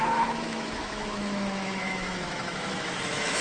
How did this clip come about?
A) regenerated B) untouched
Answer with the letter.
A